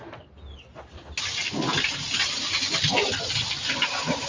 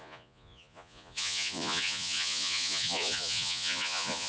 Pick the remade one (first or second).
second